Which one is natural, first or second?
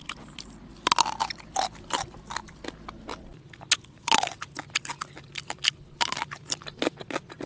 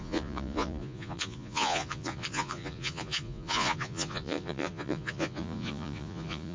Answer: first